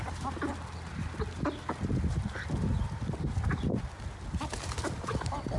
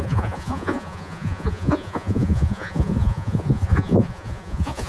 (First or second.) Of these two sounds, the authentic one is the first